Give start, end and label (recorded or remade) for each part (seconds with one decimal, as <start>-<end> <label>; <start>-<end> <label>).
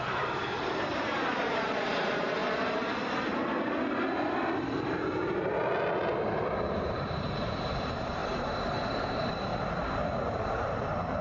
0.0-2.4 remade; 2.4-6.3 recorded; 6.3-8.2 remade; 8.2-9.1 recorded; 9.1-9.5 remade; 9.5-10.2 recorded; 10.2-11.2 remade